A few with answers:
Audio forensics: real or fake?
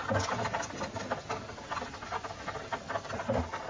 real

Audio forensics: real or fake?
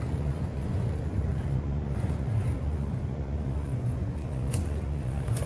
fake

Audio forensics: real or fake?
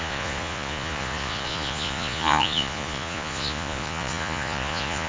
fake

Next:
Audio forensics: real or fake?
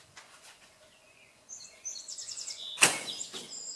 fake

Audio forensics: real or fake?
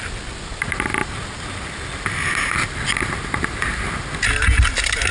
real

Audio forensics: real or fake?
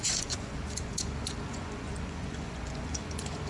fake